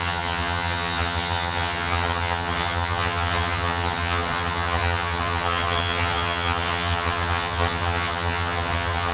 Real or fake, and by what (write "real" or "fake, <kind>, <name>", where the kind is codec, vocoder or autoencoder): fake, vocoder, HiFi-GAN